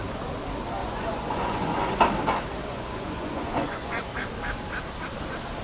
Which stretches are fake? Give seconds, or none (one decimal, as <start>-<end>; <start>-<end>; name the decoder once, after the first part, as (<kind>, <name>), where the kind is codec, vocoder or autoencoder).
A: 0.8-2.0 (vocoder, Vocos); 2.6-4.1